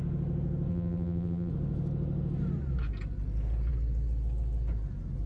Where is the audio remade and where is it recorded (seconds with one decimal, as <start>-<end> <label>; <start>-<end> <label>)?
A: 0.0-0.7 recorded; 0.7-1.5 remade; 1.5-5.3 recorded